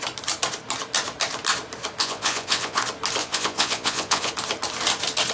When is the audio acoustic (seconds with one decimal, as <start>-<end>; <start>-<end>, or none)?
0.0-2.0; 2.8-3.2; 4.3-5.3